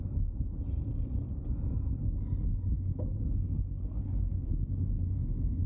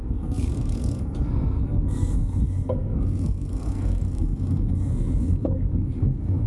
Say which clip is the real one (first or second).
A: first